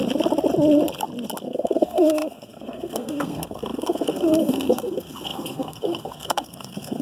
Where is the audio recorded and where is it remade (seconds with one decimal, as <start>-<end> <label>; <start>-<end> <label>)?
0.0-1.4 recorded; 1.4-7.0 remade